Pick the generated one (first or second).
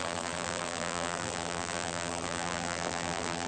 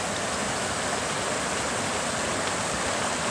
first